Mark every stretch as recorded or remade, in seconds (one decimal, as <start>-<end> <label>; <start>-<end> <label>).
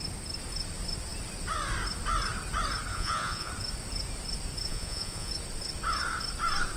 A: 0.0-2.9 recorded; 2.9-3.5 remade; 3.5-4.7 recorded; 4.7-5.3 remade; 5.3-6.8 recorded